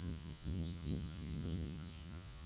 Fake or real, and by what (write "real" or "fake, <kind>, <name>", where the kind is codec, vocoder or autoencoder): fake, vocoder, Vocos